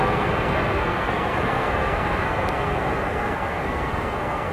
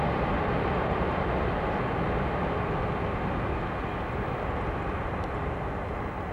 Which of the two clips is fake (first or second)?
first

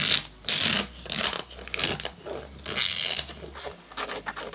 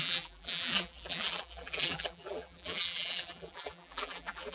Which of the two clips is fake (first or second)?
second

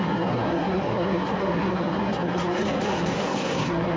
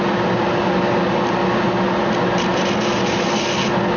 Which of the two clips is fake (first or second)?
first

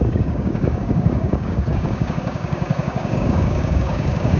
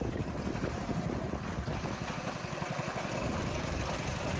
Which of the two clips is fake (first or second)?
first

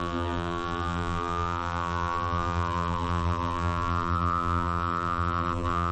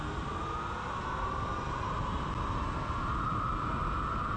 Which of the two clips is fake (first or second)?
first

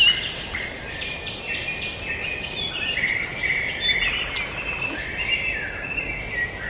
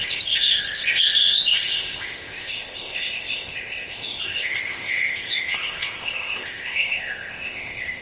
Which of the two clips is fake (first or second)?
second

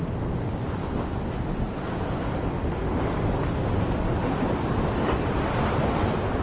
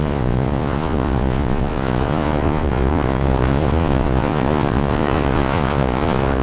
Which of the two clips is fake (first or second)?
second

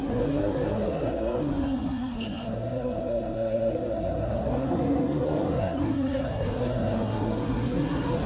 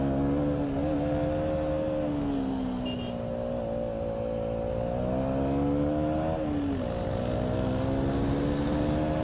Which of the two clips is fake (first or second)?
first